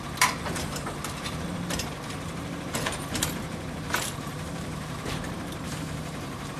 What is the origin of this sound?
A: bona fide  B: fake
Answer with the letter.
B